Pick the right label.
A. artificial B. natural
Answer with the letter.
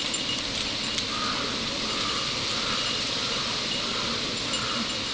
B